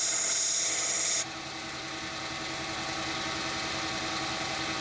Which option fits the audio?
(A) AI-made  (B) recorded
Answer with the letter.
B